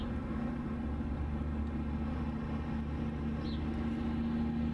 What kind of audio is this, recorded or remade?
recorded